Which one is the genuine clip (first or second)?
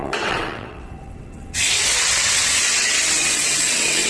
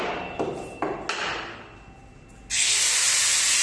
second